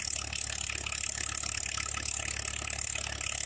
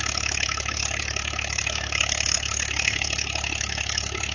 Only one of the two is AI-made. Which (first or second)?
second